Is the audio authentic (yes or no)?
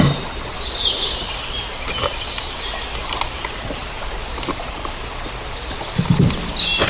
yes